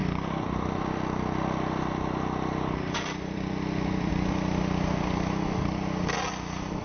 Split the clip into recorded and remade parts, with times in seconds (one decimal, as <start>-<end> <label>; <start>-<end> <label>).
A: 0.0-4.1 remade; 4.1-6.8 recorded